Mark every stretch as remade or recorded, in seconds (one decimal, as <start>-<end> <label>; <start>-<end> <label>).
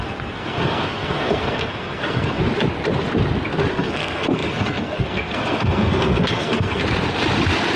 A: 0.0-2.4 remade; 2.4-3.7 recorded; 3.7-6.8 remade; 6.8-7.8 recorded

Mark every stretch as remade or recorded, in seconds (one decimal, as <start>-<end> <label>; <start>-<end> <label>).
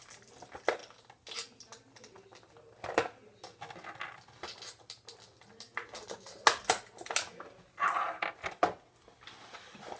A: 0.0-10.0 recorded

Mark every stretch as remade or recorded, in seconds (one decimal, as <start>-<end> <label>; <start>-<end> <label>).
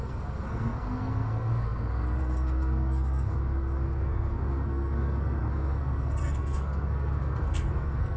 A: 0.0-8.2 remade